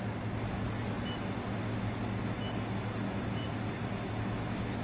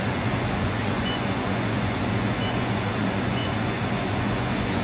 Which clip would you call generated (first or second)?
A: second